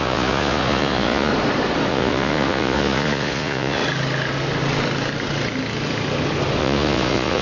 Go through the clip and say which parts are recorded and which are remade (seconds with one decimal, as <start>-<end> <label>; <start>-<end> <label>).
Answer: 0.0-1.3 remade; 1.3-1.9 recorded; 1.9-3.8 remade; 3.8-6.6 recorded; 6.6-7.4 remade